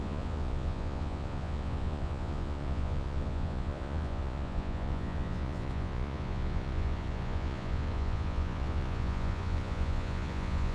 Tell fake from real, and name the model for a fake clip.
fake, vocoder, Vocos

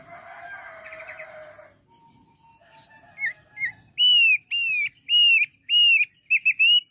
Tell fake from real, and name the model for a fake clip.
real